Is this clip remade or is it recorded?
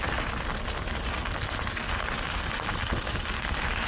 recorded